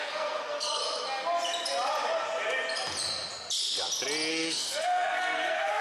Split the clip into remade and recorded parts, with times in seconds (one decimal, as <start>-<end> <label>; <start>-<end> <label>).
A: 0.0-0.8 remade; 0.8-4.3 recorded; 4.3-5.8 remade